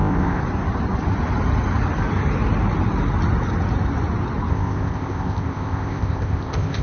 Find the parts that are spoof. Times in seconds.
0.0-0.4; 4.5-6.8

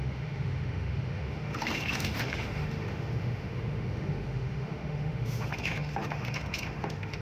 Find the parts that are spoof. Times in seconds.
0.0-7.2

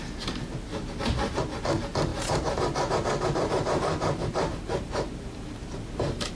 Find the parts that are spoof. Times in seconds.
0.7-1.4; 2.1-6.3